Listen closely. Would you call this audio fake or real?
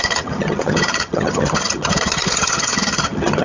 fake